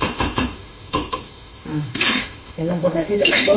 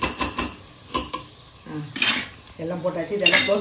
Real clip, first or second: second